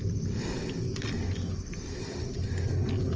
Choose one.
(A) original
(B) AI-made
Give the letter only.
A